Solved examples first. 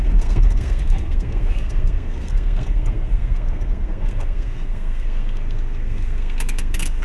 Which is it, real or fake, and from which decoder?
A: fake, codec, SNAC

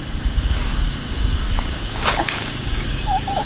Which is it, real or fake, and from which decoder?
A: fake, codec, DAC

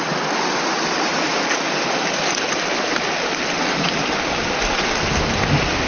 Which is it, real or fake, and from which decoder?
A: real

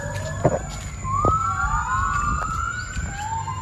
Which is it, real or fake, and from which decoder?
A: real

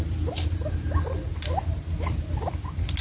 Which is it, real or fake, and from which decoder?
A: real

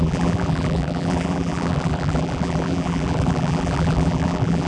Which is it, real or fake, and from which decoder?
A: fake, vocoder, BigVGAN v2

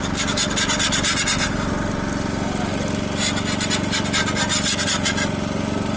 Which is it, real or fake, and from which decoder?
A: real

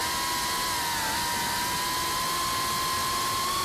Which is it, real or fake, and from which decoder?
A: real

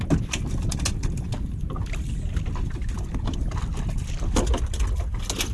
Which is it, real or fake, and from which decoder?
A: real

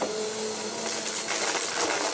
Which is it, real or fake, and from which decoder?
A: real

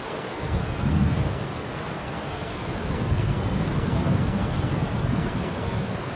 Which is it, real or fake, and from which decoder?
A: fake, codec, SNAC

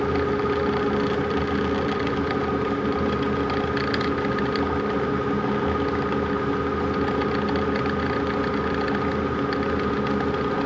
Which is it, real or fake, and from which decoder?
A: real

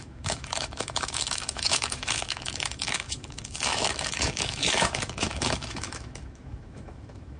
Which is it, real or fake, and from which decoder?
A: fake, autoencoder, DAC-VAE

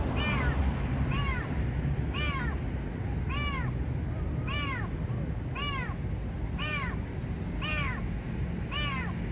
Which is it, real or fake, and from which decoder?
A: real